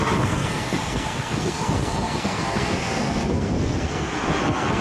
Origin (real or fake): fake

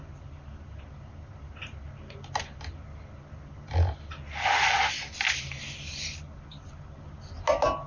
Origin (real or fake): real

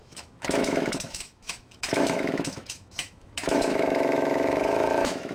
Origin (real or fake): fake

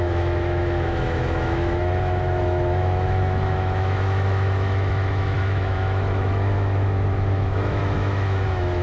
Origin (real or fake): fake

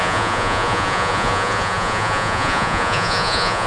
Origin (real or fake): fake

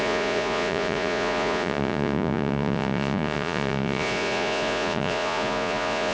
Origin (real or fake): fake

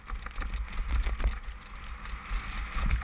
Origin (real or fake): real